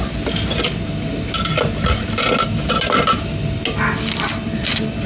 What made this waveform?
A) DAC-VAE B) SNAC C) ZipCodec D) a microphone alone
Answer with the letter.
D